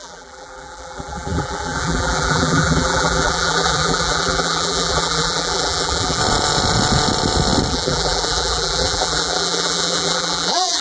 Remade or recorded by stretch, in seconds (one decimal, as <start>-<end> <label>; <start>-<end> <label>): 0.0-6.2 remade; 6.2-7.7 recorded; 7.7-10.8 remade